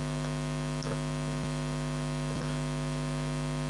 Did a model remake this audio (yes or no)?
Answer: no